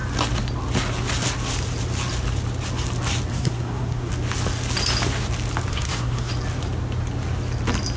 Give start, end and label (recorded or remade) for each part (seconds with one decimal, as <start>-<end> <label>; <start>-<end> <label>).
0.0-3.3 recorded; 3.3-4.1 remade; 4.1-5.7 recorded; 5.7-6.3 remade; 6.3-8.0 recorded